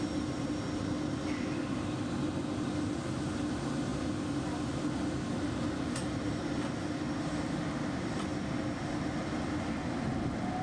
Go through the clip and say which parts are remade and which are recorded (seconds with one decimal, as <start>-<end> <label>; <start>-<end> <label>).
0.0-10.6 recorded